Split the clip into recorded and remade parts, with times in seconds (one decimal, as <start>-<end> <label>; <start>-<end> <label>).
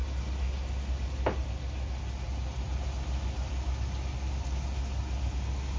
0.0-5.8 recorded